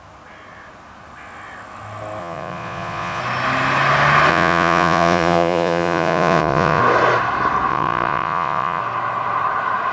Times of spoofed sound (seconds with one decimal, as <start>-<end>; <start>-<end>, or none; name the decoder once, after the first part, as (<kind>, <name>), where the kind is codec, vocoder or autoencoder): 2.2-3.2 (vocoder, Vocos); 4.3-6.8; 7.7-8.8